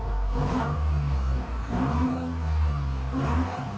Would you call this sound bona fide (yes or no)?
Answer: no